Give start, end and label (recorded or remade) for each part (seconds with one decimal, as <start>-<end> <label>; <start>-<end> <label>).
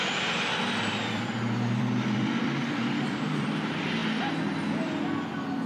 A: 0.0-4.0 remade; 4.0-5.7 recorded